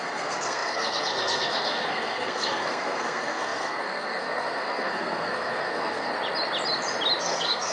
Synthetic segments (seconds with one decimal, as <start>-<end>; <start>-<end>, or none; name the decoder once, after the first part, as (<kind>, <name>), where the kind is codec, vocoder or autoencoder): 0.0-6.1 (codec, SNAC); 7.2-7.7

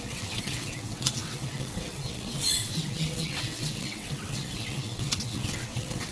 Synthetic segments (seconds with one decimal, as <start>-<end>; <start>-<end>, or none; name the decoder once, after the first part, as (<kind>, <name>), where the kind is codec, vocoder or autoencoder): 0.0-6.1 (vocoder, WaveNeXt)